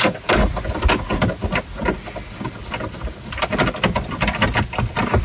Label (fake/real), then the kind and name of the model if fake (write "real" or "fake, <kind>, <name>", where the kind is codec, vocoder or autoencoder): real